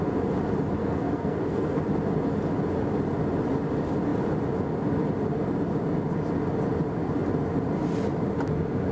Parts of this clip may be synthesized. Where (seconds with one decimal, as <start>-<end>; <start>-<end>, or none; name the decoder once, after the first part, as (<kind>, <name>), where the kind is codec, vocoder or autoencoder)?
0.8-1.8 (codec, SNAC)